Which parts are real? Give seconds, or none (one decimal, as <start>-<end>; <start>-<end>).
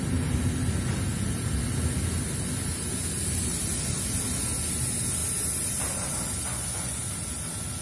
0.0-6.5; 7.0-7.8